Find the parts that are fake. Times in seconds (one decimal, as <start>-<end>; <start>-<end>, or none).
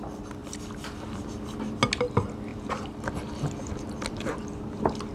0.4-1.3; 2.5-4.5